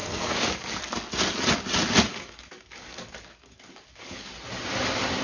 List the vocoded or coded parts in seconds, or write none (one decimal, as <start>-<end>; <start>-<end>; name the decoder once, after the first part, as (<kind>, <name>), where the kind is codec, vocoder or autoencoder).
0.0-0.8 (codec, DAC); 2.1-4.3